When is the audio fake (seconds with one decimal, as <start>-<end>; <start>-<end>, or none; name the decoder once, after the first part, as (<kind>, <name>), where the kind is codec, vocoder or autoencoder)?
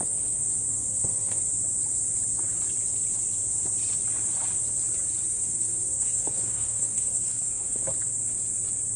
0.7-1.4 (codec, SNAC); 5.3-7.8